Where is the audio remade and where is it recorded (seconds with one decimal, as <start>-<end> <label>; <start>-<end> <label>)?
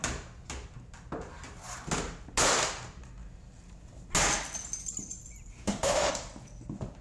0.0-5.5 recorded; 5.5-6.1 remade; 6.1-7.0 recorded